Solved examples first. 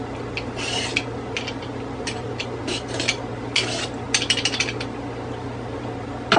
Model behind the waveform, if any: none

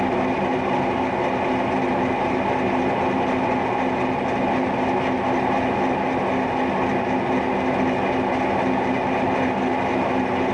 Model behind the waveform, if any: none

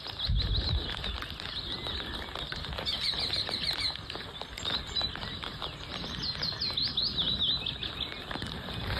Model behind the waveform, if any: none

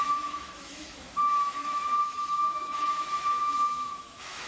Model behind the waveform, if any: autoencoder, DAC-VAE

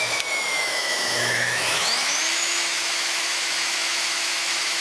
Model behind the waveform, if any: autoencoder, DAC-VAE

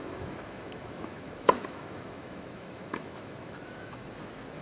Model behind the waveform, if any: autoencoder, DAC-VAE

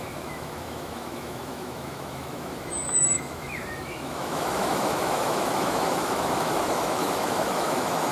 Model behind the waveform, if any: autoencoder, DAC-VAE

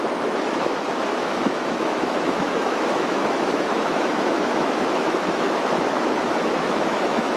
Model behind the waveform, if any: autoencoder, DAC-VAE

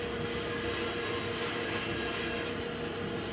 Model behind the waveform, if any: none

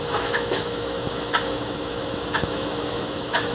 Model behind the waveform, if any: autoencoder, DAC-VAE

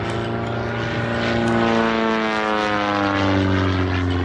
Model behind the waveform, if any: none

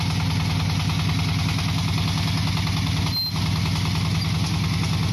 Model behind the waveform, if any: none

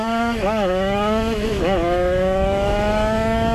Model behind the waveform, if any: autoencoder, DAC-VAE